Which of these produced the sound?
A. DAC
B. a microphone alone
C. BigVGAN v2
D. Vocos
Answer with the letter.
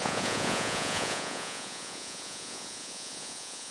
D